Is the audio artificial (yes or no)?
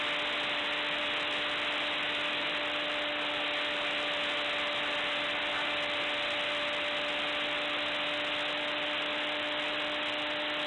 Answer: no